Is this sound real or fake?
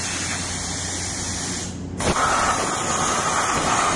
real